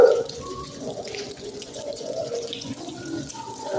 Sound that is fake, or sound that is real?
fake